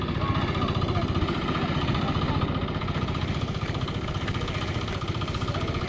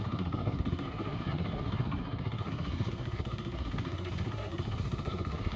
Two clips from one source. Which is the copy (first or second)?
second